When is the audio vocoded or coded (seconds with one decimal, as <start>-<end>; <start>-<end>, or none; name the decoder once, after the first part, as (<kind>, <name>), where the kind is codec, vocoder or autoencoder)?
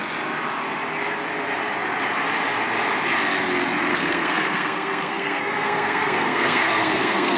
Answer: 3.9-7.4 (codec, SNAC)